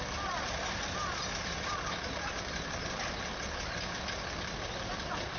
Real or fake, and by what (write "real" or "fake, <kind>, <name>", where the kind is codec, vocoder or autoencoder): real